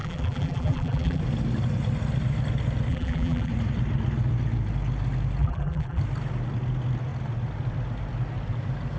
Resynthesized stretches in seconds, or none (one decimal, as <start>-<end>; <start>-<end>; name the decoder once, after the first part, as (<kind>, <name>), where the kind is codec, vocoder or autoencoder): 0.0-1.2 (vocoder, BigVGAN v2); 2.9-3.5; 5.4-6.0